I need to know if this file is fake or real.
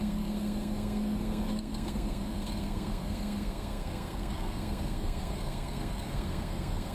fake